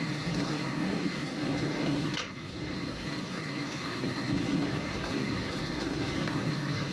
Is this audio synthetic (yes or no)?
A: yes